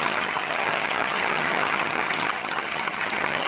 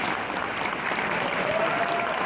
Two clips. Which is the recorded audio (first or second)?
second